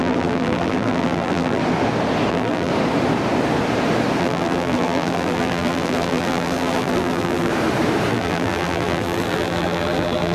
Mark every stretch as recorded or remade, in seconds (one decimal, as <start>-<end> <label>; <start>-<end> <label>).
0.0-1.6 remade; 1.6-2.3 recorded; 2.3-2.7 remade; 2.7-4.2 recorded; 4.2-7.5 remade; 7.5-8.1 recorded; 8.1-10.3 remade